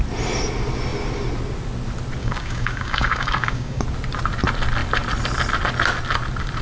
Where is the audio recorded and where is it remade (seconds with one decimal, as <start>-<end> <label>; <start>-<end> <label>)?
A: 0.0-2.2 recorded; 2.2-3.8 remade; 3.8-6.6 recorded